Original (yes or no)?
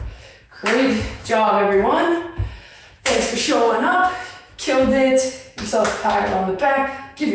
no